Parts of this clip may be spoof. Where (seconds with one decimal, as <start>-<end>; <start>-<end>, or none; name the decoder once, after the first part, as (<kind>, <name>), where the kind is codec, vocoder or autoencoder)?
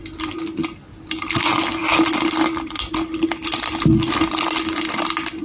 none